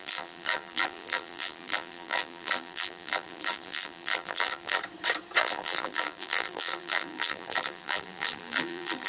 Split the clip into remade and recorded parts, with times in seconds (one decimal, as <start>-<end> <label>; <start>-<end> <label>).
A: 0.0-4.8 remade; 4.8-5.4 recorded; 5.4-9.1 remade